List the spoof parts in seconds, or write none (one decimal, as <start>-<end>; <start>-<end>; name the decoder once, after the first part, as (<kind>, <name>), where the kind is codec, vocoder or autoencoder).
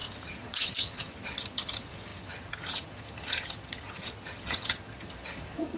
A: 0.0-5.8 (vocoder, HiFi-GAN)